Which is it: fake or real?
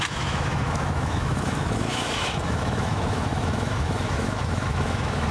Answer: fake